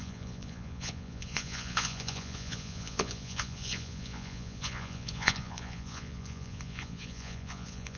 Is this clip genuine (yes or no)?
no